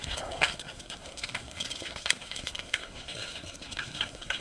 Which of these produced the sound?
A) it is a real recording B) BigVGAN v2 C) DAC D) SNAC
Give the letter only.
D